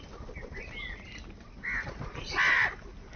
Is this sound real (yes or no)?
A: yes